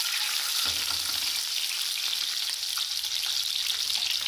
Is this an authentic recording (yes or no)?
yes